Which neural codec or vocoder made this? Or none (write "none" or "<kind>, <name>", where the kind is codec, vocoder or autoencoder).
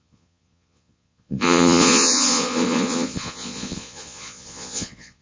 vocoder, Vocos